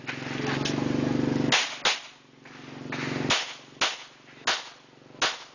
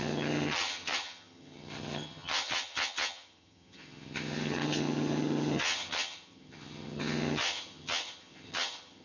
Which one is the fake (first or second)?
second